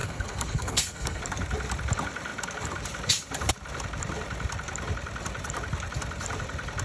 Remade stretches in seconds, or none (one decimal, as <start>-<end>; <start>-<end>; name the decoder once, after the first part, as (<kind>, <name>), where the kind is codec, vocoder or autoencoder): 0.0-1.2 (codec, SNAC)